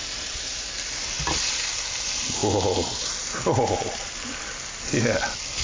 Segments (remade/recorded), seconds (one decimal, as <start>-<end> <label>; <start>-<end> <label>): 0.0-2.4 recorded; 2.4-3.0 remade; 3.0-5.6 recorded